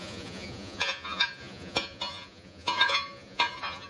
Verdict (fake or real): fake